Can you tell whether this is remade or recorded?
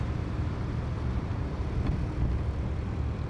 recorded